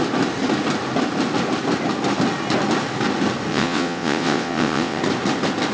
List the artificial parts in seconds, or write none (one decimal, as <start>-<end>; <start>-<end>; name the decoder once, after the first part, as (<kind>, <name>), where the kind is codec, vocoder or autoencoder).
3.5-5.0 (vocoder, WaveNeXt)